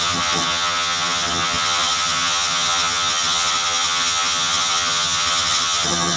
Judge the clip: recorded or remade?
remade